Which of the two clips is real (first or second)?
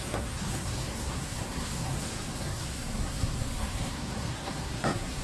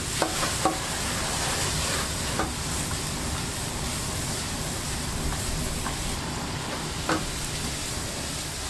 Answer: second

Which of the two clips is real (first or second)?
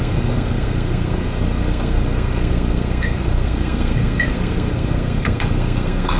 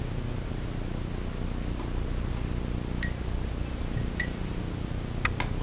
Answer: second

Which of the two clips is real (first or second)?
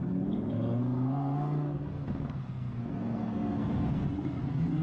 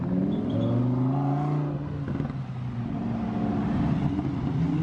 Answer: second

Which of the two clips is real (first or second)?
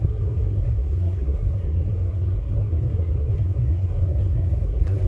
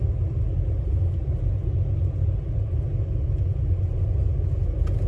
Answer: second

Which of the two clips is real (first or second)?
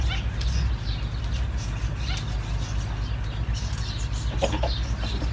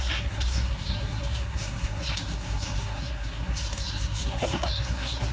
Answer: first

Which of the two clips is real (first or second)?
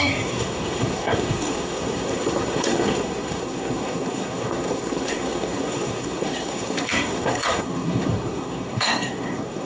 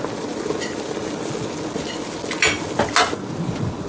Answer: second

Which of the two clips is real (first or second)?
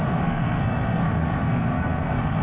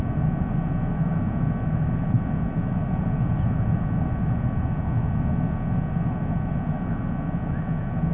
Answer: second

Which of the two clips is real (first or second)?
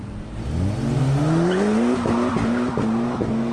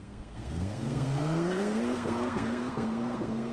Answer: first